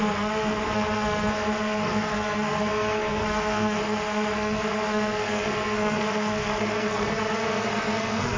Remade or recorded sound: remade